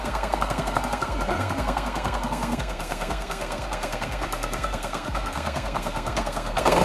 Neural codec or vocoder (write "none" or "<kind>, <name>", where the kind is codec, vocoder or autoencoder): codec, SNAC